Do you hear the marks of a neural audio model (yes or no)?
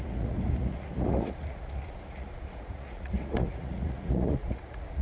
yes